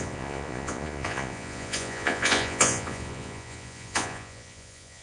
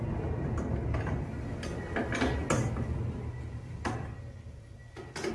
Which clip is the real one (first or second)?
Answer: second